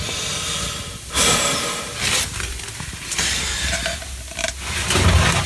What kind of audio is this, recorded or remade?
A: recorded